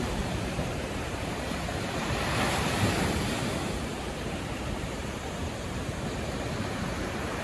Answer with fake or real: fake